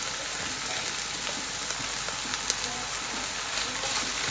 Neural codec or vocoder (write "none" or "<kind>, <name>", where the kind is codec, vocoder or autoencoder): none